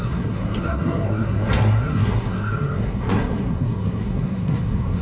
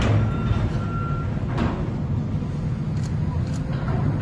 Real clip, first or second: second